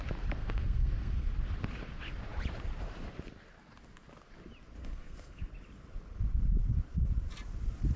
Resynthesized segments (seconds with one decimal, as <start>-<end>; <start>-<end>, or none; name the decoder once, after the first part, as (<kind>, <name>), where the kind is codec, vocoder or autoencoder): 0.4-1.3 (codec, SNAC); 4.8-5.5

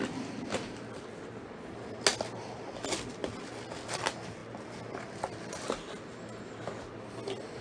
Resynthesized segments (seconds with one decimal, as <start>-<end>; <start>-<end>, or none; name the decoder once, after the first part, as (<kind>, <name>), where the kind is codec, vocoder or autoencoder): none

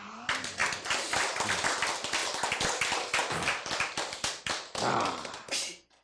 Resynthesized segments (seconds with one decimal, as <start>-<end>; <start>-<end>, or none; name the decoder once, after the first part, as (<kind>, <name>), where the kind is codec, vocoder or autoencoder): 0.0-2.2 (vocoder, BigVGAN v2); 2.8-6.0

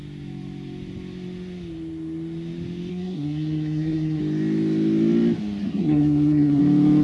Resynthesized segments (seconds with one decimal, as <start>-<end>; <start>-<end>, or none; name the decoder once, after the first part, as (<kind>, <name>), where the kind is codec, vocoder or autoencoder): 2.9-4.2 (codec, SNAC); 5.6-6.6